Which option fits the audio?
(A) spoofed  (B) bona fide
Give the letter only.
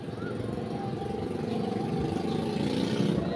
B